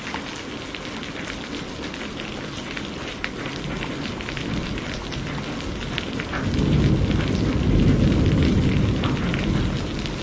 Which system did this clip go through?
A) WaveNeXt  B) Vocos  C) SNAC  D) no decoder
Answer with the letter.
D